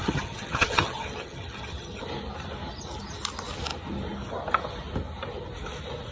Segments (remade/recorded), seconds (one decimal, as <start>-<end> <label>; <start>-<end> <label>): 0.0-2.0 remade; 2.0-6.1 recorded